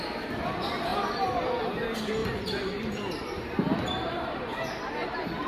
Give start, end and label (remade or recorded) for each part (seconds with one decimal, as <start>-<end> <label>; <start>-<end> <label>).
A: 0.0-2.2 recorded; 2.2-4.8 remade; 4.8-5.5 recorded